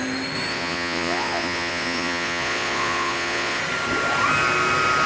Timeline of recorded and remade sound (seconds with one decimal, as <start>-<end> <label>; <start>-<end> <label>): 0.0-0.5 recorded; 0.5-3.6 remade; 3.6-5.1 recorded